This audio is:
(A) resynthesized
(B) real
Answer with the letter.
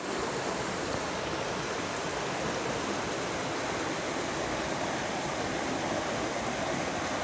B